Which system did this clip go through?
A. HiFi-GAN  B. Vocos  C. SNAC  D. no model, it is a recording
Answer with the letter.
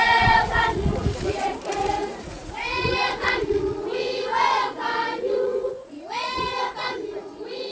B